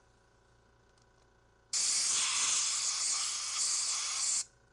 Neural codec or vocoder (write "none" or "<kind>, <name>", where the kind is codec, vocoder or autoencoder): none